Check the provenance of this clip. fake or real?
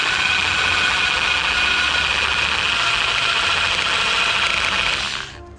real